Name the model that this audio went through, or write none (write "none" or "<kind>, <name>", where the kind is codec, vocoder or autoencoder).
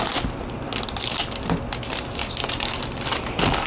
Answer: none